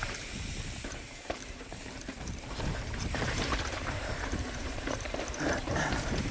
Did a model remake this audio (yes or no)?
yes